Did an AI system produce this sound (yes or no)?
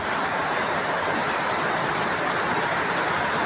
no